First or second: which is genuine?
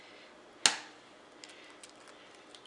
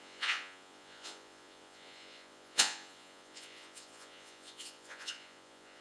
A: first